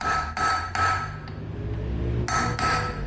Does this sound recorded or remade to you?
recorded